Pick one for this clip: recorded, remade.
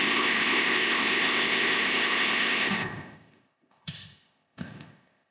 remade